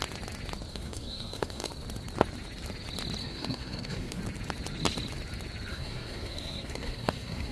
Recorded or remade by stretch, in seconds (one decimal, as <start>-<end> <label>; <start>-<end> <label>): 0.0-0.7 recorded; 0.7-1.7 remade; 1.7-3.2 recorded; 3.2-4.2 remade; 4.2-5.7 recorded; 5.7-7.5 remade